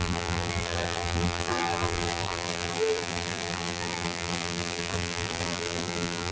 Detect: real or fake fake